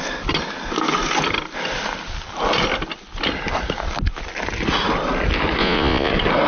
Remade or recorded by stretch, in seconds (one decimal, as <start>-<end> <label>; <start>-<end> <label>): 0.0-5.6 recorded; 5.6-6.1 remade; 6.1-6.5 recorded